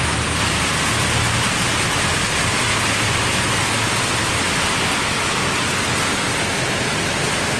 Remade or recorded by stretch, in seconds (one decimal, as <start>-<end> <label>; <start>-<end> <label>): 0.0-7.6 recorded